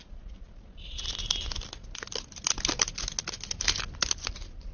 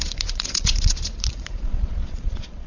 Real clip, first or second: first